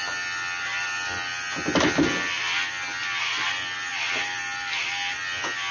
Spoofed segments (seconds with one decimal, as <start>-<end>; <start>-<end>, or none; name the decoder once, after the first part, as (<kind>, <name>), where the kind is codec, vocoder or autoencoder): none